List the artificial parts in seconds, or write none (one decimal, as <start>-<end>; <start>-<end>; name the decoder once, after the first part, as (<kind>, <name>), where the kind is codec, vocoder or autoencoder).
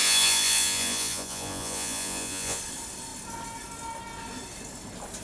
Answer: 0.0-2.6 (vocoder, Vocos)